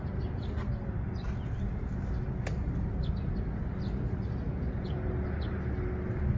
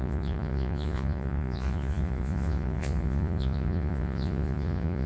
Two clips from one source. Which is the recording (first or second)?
first